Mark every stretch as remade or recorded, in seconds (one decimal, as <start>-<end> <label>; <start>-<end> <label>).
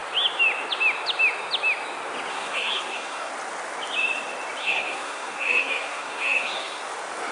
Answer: 0.0-2.3 recorded; 2.3-3.3 remade; 3.3-4.6 recorded; 4.6-6.8 remade; 6.8-7.3 recorded